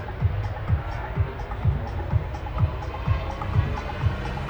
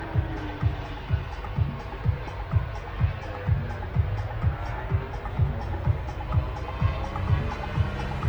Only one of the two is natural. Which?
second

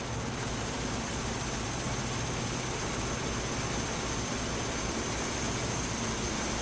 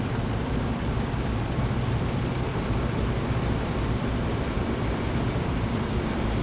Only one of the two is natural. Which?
first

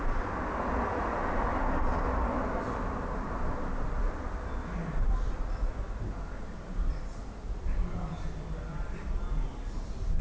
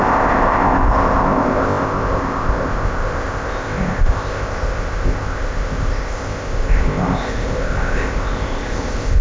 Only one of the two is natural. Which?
first